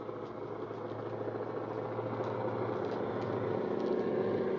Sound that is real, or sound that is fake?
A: real